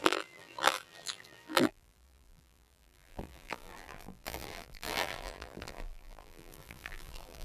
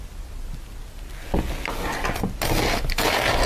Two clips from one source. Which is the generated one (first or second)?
first